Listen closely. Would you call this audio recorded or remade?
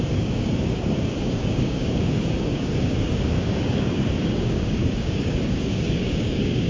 remade